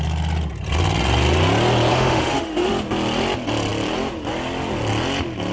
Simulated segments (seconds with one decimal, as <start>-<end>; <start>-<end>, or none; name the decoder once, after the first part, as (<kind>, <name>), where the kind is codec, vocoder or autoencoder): 1.9-2.7 (autoencoder, DAC-VAE)